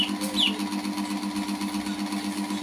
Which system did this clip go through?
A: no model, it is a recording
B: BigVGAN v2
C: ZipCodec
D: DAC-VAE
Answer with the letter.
A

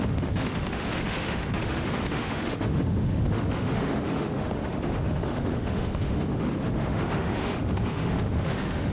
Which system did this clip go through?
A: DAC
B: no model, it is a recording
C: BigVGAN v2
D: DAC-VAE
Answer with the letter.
D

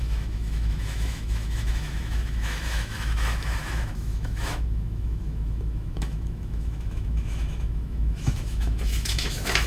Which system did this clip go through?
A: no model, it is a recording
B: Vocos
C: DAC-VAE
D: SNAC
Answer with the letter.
C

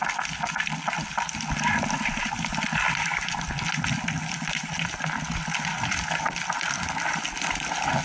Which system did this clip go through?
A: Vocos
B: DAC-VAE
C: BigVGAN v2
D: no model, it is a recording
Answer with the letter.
D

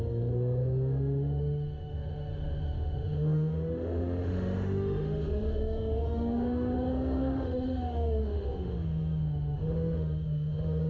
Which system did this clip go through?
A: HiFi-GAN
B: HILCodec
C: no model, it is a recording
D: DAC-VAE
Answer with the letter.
D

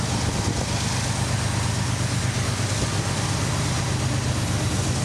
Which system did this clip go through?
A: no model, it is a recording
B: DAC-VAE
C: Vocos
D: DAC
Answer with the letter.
A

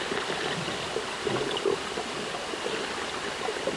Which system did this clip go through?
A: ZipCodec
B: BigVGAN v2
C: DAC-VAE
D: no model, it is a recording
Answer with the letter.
D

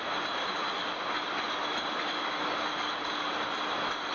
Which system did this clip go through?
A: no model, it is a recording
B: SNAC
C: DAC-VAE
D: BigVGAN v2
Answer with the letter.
A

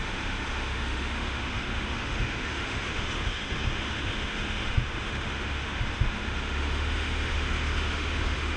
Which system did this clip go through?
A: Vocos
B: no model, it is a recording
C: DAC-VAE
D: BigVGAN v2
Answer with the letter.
C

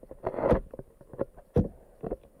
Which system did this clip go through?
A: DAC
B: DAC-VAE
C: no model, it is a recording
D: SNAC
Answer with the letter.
C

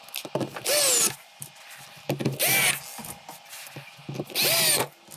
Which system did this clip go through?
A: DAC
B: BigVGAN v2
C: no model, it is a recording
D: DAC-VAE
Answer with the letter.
C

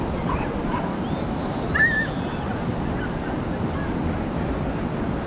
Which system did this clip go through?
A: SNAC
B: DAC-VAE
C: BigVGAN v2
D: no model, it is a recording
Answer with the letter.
D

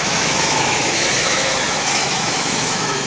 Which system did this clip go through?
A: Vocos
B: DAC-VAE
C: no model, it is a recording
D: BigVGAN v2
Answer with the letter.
B